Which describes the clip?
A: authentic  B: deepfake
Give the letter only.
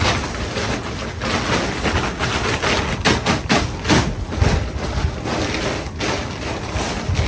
A